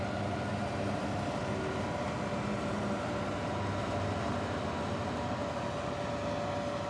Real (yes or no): yes